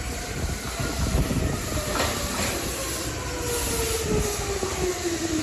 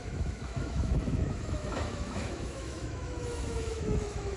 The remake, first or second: second